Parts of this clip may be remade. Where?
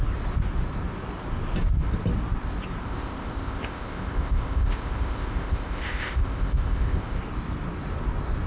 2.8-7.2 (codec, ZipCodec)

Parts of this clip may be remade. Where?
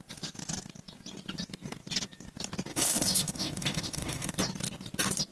2.7-4.4 (autoencoder, DAC-VAE)